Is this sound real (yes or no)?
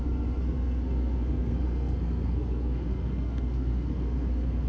no